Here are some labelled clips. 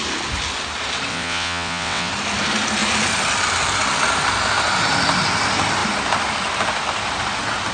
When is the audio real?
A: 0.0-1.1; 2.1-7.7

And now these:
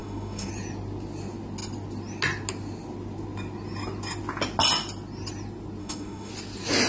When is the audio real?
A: 0.5-5.8; 6.3-6.9

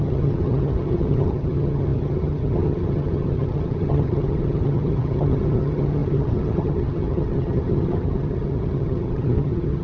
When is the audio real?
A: none

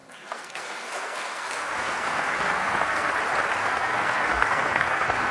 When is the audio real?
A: 3.1-3.6

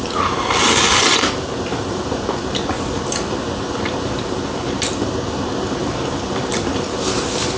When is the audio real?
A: 0.0-1.7; 2.3-5.8; 6.5-7.6

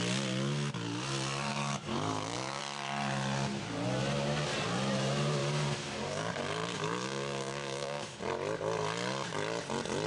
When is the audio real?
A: 0.0-1.5; 2.6-5.4; 8.2-10.1

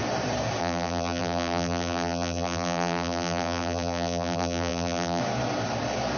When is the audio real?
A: 0.0-0.6; 5.2-6.2

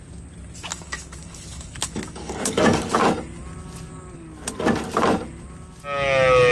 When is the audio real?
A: 0.0-0.7; 3.1-6.5